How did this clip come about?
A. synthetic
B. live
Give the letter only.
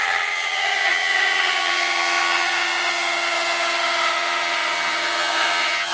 A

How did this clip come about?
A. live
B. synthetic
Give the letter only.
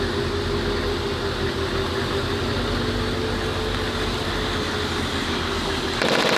A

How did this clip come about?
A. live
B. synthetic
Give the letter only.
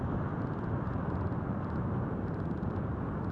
A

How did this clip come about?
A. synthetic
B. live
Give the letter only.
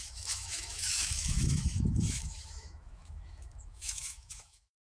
A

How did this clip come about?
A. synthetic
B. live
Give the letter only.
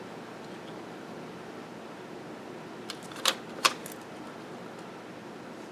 B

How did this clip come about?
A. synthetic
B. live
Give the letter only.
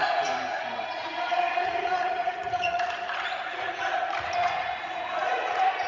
A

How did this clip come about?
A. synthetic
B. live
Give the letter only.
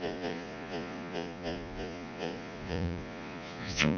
A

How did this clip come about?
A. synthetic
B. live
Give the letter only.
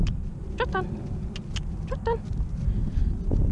B